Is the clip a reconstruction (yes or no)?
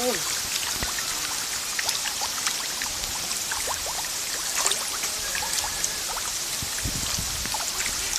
no